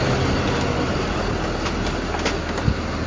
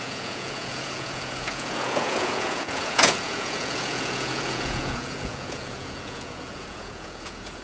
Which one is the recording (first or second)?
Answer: first